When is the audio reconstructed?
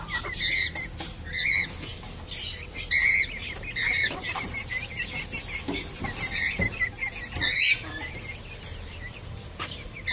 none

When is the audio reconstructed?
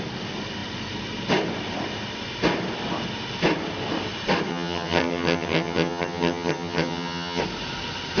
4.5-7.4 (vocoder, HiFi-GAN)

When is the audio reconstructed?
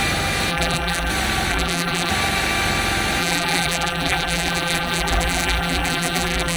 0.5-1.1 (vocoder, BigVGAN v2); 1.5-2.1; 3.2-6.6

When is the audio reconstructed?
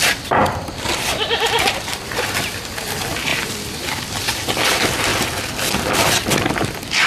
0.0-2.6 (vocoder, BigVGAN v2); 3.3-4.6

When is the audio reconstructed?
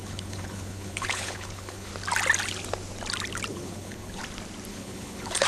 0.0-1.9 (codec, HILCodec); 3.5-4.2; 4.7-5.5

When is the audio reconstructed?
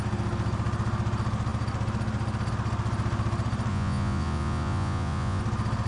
3.7-5.4 (vocoder, Vocos)